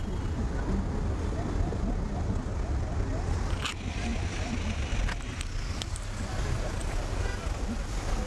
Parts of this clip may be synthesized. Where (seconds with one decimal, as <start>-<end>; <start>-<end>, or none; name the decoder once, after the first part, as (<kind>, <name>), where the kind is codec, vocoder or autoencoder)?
2.5-3.2 (vocoder, BigVGAN v2); 4.1-5.4; 6.8-7.6